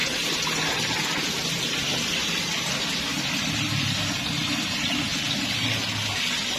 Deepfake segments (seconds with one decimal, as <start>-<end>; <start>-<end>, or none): none

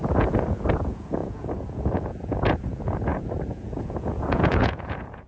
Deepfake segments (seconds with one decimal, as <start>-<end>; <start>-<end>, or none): 0.0-5.3